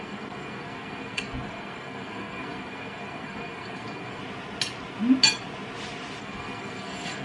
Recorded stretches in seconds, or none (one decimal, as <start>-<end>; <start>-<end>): 4.2-6.2